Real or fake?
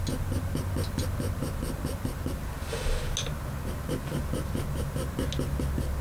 real